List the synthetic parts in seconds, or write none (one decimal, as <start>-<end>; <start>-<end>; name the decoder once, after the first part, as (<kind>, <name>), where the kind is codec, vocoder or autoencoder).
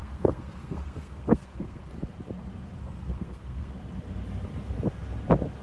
0.0-1.9 (codec, SNAC); 2.8-3.7